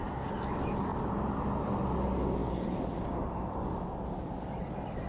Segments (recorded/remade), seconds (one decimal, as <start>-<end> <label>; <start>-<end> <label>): 0.0-5.1 recorded